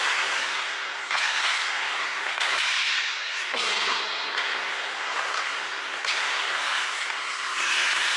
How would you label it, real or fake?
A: fake